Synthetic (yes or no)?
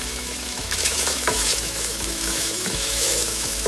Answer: yes